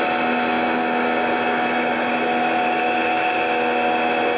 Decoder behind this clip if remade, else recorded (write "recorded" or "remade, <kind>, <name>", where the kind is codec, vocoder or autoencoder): recorded